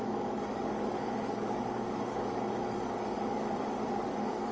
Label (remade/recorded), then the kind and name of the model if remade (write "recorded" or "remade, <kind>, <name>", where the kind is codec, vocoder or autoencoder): remade, codec, DAC